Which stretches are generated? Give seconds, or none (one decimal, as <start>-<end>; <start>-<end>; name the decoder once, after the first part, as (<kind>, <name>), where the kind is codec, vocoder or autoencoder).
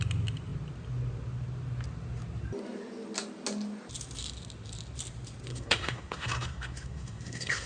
5.5-7.7 (codec, SNAC)